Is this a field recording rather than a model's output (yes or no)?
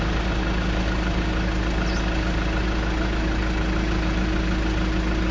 yes